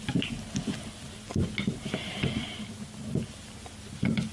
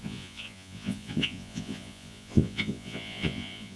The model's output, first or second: second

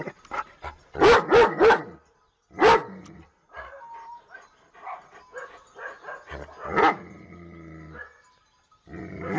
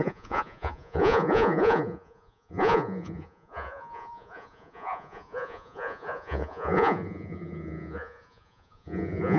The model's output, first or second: second